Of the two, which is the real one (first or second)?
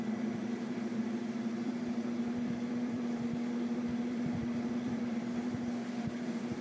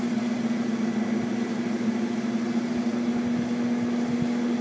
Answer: second